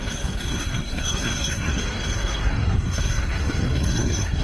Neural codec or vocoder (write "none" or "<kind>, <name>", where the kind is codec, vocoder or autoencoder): codec, SNAC